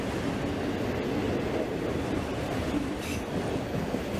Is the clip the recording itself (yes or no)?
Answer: yes